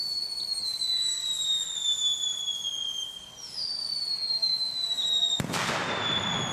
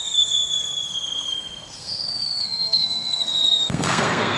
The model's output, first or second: second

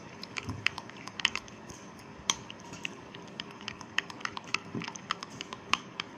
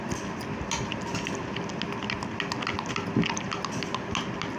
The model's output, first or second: first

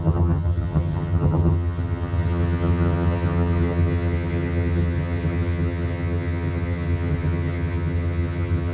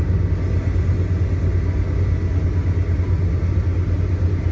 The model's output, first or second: first